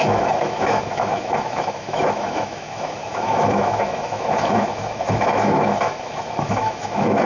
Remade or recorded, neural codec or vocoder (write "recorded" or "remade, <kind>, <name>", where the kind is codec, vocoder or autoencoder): remade, autoencoder, DAC-VAE